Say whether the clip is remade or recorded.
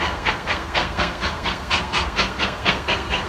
remade